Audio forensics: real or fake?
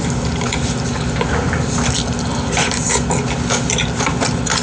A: real